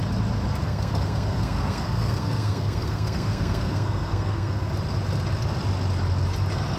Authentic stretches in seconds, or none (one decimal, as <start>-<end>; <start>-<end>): 0.0-0.6; 4.7-6.8